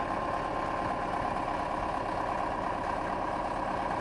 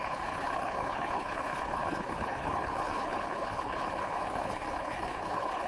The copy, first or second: second